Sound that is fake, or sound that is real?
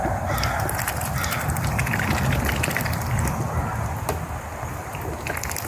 real